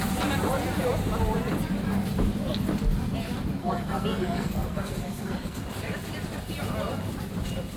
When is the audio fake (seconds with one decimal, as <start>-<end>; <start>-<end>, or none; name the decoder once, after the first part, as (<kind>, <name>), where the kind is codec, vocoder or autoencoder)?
3.6-5.6 (codec, SNAC)